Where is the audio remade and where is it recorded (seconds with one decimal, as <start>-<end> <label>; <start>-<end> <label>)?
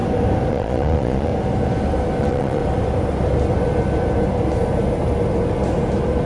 0.0-0.5 recorded; 0.5-1.3 remade; 1.3-2.2 recorded; 2.2-2.6 remade; 2.6-6.3 recorded